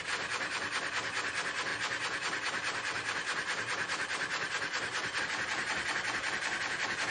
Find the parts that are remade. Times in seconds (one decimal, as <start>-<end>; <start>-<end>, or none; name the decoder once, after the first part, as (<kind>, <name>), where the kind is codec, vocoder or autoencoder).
0.0-1.7 (vocoder, BigVGAN v2); 5.2-7.1